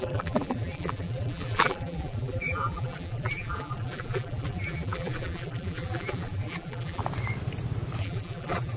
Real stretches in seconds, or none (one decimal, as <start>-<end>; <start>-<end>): 7.0-8.0